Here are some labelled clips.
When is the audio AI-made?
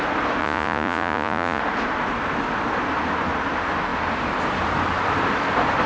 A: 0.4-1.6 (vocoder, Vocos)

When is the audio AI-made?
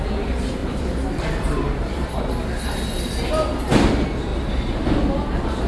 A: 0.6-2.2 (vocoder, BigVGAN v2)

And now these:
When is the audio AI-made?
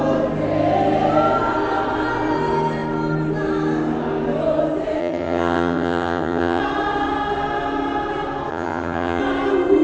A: 5.0-6.6 (vocoder, HiFi-GAN); 8.5-9.2